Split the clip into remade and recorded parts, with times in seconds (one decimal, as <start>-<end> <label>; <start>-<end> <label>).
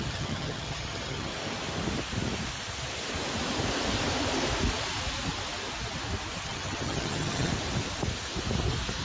0.0-1.3 remade; 1.3-6.4 recorded; 6.4-7.5 remade; 7.5-9.0 recorded